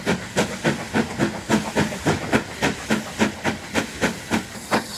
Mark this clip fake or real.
real